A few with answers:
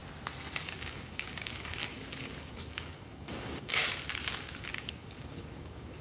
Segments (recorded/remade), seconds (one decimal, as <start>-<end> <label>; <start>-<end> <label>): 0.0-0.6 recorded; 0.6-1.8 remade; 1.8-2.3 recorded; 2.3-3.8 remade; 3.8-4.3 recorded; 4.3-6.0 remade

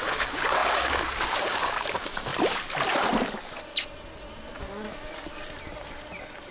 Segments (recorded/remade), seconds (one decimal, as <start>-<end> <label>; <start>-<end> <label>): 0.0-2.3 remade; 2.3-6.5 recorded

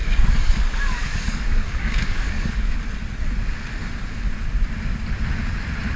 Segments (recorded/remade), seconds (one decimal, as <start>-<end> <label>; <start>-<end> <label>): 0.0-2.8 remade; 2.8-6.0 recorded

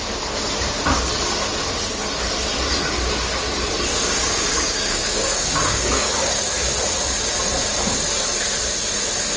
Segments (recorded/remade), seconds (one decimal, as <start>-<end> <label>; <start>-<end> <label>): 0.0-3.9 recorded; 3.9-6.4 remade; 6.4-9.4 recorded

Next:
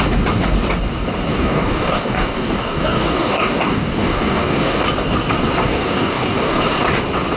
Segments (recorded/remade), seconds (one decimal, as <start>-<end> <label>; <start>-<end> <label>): 0.0-1.3 recorded; 1.3-4.8 remade; 4.8-5.6 recorded; 5.6-6.6 remade; 6.6-7.4 recorded